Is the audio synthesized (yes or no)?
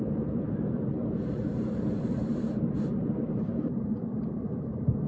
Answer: yes